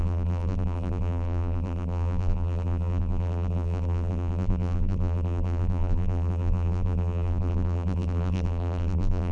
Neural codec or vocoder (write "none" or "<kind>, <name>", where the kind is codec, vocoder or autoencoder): vocoder, BigVGAN v2